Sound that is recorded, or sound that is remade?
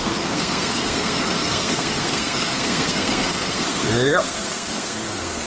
remade